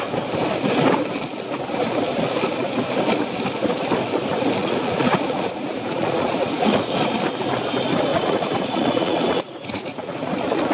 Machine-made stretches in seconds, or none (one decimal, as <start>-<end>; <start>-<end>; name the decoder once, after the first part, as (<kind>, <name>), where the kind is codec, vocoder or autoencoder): 4.6-7.0 (vocoder, Vocos); 8.1-10.7